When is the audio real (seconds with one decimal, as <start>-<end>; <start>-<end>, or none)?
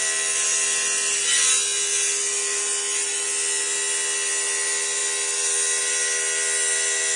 0.0-7.2